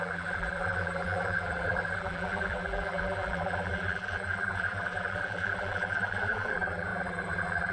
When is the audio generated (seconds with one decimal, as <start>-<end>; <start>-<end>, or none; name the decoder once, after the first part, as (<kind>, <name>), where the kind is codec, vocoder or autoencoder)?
0.0-7.7 (vocoder, BigVGAN v2)